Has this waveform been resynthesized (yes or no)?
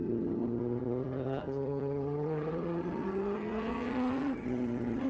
yes